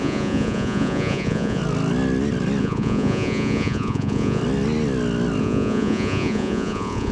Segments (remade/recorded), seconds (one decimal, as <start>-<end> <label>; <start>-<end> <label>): 0.0-1.6 remade; 1.6-2.6 recorded; 2.6-4.4 remade; 4.4-5.4 recorded; 5.4-7.1 remade